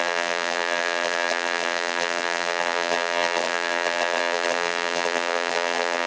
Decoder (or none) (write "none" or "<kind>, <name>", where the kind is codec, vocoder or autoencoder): vocoder, BigVGAN v2